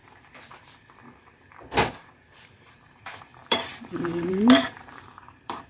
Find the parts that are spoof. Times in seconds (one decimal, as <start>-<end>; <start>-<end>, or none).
1.9-5.7